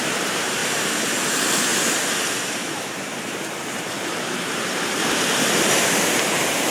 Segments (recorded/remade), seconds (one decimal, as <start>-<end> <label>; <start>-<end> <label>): 0.0-1.7 remade; 1.7-2.3 recorded; 2.3-6.7 remade